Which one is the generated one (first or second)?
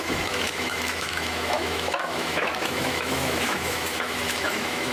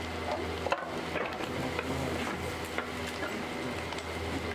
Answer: first